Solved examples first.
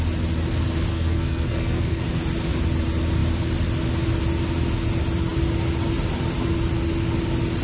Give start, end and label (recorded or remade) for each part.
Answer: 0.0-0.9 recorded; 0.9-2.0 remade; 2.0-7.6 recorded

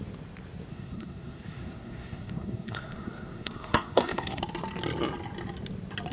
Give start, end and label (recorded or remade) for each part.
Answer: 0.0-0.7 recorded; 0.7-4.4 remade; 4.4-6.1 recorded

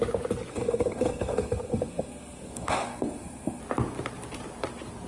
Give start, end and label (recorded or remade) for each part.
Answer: 0.0-0.5 recorded; 0.5-3.6 remade; 3.6-5.1 recorded

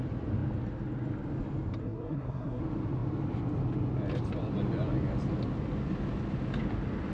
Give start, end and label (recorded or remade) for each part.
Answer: 0.0-1.8 recorded; 1.8-2.6 remade; 2.6-7.1 recorded

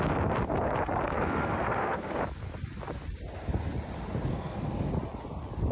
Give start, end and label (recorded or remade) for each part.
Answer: 0.0-1.1 recorded; 1.1-2.2 remade; 2.2-4.3 recorded; 4.3-4.9 remade; 4.9-5.7 recorded